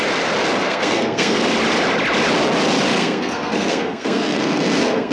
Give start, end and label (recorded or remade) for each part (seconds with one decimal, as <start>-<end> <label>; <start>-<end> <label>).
0.0-0.6 recorded; 0.6-1.4 remade; 1.4-2.9 recorded; 2.9-5.1 remade